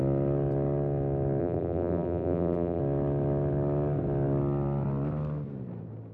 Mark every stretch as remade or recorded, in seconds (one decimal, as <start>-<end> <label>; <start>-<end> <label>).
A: 0.0-1.4 recorded; 1.4-2.8 remade; 2.8-6.1 recorded